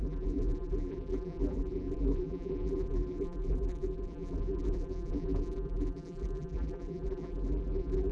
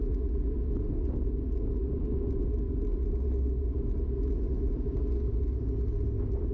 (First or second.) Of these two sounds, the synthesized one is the first